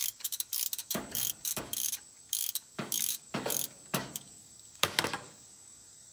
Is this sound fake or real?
fake